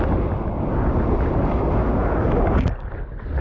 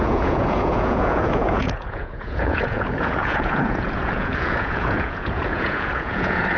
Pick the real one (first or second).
first